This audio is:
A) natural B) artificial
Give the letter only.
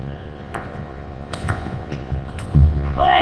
B